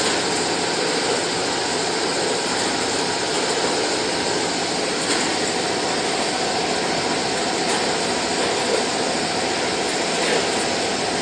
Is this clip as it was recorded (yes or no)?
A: yes